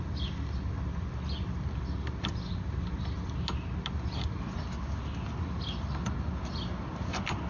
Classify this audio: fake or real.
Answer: real